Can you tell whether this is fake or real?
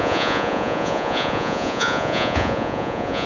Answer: fake